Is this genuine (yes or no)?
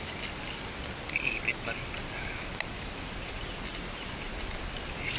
yes